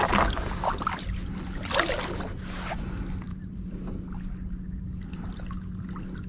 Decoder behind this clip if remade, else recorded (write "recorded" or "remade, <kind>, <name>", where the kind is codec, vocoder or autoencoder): recorded